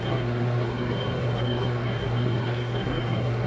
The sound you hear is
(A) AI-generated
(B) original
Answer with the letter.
A